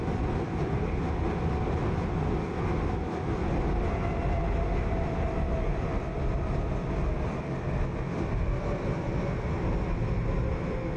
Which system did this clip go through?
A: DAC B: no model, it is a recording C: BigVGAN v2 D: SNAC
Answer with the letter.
B